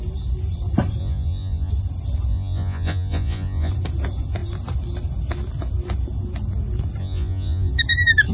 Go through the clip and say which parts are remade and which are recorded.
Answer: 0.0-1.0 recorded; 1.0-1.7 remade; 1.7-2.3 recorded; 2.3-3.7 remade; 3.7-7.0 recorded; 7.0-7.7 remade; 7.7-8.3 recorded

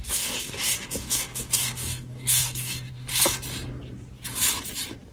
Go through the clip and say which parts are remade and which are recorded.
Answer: 0.0-3.1 remade; 3.1-5.1 recorded

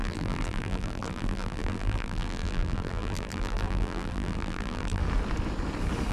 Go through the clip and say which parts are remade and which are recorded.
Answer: 0.0-5.0 remade; 5.0-6.1 recorded

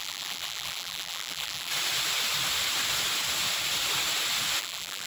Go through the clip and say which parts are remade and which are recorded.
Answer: 0.0-1.7 remade; 1.7-4.6 recorded; 4.6-5.1 remade

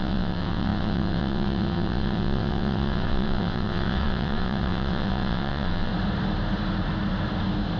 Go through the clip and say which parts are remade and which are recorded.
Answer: 0.0-5.9 remade; 5.9-7.8 recorded

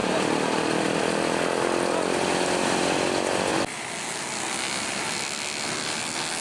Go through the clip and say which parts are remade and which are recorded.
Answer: 0.0-1.0 remade; 1.0-6.4 recorded

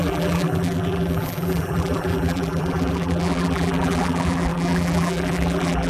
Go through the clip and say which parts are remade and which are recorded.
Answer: 0.0-5.9 remade